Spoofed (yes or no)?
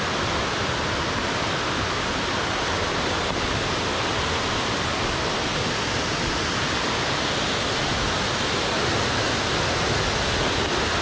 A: no